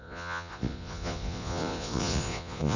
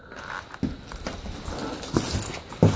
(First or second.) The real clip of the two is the second